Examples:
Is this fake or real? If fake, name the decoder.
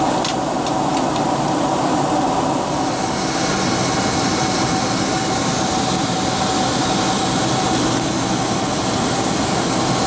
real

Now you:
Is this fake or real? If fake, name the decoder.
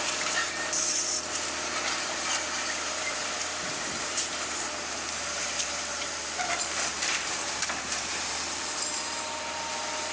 fake, vocoder, BigVGAN v2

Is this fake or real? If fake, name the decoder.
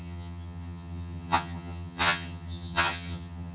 fake, vocoder, HiFi-GAN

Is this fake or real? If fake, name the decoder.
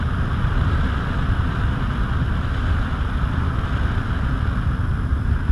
real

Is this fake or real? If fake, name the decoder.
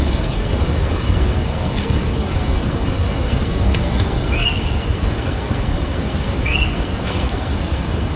fake, codec, SNAC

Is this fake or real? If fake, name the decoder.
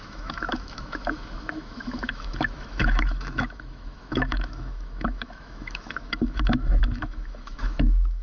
fake, autoencoder, DAC-VAE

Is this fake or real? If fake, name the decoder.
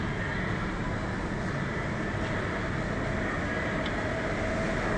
real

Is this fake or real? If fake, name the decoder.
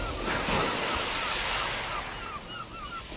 real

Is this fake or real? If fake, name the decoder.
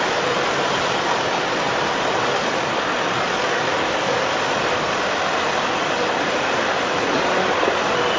fake, vocoder, BigVGAN v2